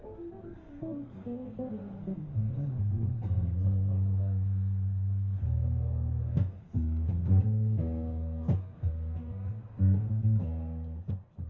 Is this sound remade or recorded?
remade